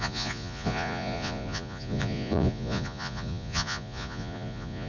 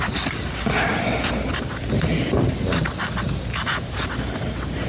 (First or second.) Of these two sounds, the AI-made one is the first